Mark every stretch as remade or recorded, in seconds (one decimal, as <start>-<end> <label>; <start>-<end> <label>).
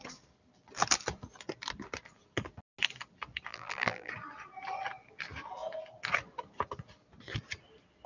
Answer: 0.0-3.5 recorded; 3.5-4.1 remade; 4.1-8.1 recorded